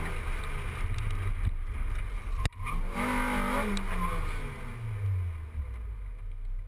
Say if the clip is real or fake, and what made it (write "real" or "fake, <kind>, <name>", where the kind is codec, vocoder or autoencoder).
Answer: real